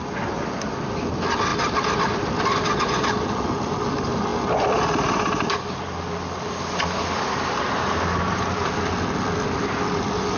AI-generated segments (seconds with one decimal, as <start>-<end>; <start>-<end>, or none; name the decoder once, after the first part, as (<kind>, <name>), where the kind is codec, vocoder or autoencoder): 1.5-2.4 (vocoder, BigVGAN v2)